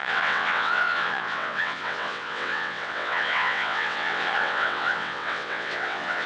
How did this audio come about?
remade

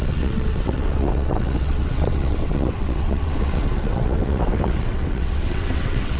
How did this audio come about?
remade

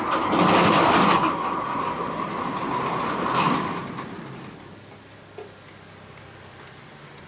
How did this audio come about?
recorded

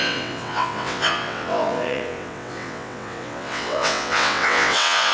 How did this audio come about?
remade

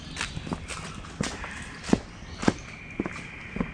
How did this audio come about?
recorded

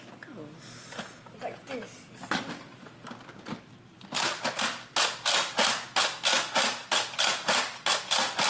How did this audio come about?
recorded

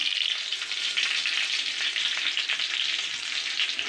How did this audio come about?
recorded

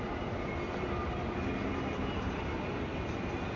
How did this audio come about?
recorded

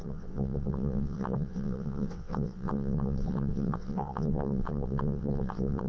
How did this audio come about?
remade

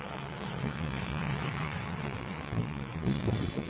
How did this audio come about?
remade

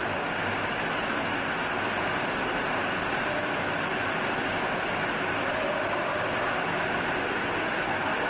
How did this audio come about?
recorded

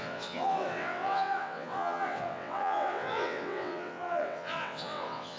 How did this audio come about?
remade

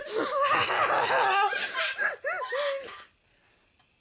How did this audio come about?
recorded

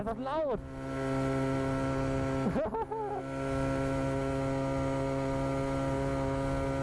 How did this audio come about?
recorded